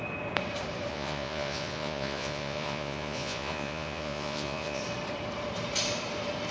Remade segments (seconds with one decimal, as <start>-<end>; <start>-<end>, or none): 0.9-4.8